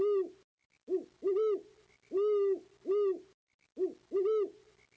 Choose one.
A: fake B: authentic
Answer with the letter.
B